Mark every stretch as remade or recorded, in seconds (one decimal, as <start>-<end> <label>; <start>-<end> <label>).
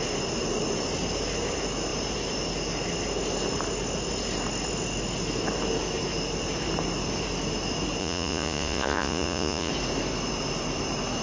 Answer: 0.0-8.0 recorded; 8.0-9.7 remade; 9.7-11.2 recorded